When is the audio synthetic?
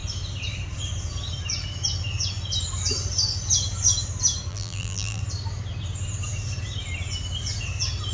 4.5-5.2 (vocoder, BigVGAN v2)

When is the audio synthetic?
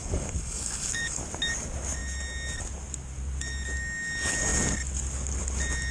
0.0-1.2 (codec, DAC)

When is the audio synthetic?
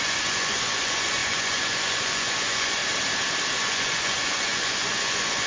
0.0-2.8 (vocoder, Vocos); 3.6-5.5